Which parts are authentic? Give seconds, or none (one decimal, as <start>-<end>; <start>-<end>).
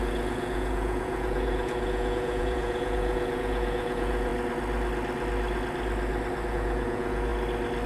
4.3-6.5; 7.3-7.9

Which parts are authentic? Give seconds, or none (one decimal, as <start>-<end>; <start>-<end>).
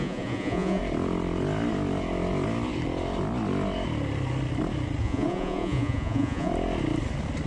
0.8-5.0; 6.5-7.5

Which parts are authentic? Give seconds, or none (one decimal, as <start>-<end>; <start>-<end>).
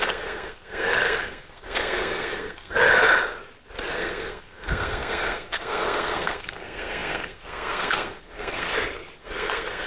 3.1-3.9; 8.7-9.2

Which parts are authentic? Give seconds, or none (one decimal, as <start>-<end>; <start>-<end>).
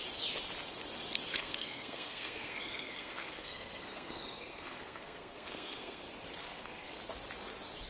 0.0-1.3; 6.0-6.4; 7.0-7.9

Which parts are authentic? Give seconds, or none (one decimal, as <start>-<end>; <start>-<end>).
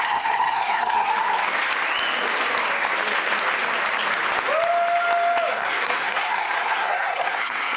1.1-5.5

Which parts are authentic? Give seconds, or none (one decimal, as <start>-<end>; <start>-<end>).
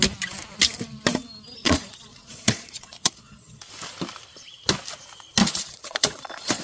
0.0-1.6; 3.7-5.4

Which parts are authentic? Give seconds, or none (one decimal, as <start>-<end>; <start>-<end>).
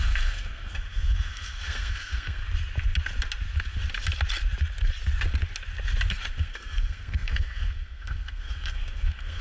2.4-6.3